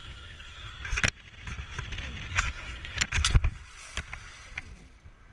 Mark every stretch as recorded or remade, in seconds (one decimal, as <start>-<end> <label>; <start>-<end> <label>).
0.0-0.7 remade; 0.7-2.3 recorded; 2.3-3.0 remade; 3.0-5.3 recorded

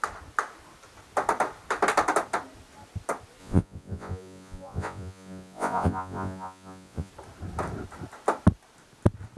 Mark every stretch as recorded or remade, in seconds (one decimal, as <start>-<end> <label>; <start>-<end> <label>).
0.0-3.4 recorded; 3.4-7.1 remade; 7.1-9.4 recorded

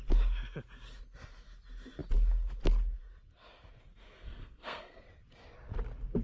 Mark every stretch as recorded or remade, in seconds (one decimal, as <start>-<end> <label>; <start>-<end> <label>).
0.0-3.9 recorded; 3.9-5.0 remade; 5.0-6.2 recorded

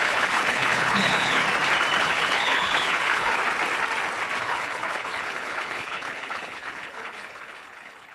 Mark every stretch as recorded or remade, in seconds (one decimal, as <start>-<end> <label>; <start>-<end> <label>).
0.0-1.4 remade; 1.4-2.0 recorded; 2.0-3.4 remade; 3.4-4.4 recorded; 4.4-8.1 remade

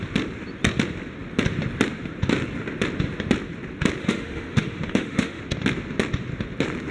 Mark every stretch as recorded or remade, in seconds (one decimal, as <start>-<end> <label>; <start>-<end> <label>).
0.0-4.0 recorded; 4.0-5.4 remade; 5.4-6.9 recorded

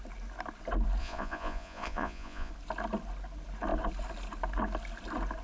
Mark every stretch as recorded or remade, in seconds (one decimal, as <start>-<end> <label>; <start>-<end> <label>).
0.0-1.0 recorded; 1.0-2.5 remade; 2.5-5.4 recorded

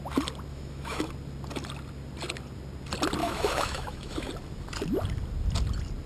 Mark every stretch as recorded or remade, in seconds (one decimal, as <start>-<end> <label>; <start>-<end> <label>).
0.0-0.5 recorded; 0.5-1.1 remade; 1.1-3.2 recorded; 3.2-4.3 remade; 4.3-6.1 recorded